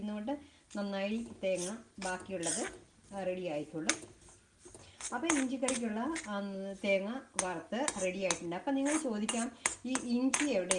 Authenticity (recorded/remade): recorded